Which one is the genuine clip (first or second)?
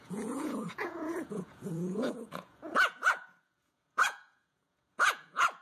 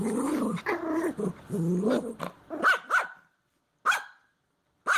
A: second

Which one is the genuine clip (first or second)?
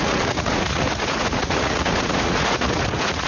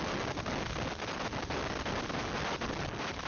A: second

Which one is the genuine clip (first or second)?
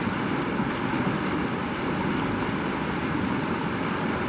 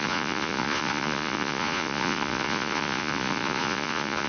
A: first